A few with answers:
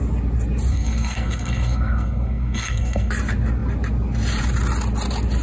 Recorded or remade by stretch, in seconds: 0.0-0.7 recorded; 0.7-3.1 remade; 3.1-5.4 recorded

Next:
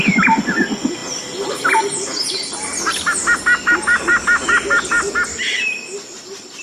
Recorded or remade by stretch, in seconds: 0.0-6.6 recorded

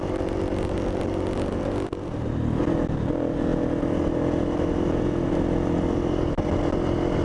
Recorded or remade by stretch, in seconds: 0.0-7.2 recorded

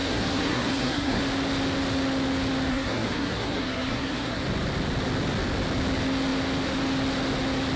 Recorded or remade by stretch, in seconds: 0.0-1.2 remade; 1.2-2.7 recorded; 2.7-4.4 remade; 4.4-7.8 recorded